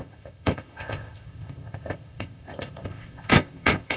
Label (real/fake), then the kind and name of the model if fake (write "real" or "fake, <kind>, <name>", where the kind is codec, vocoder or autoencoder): fake, codec, ZipCodec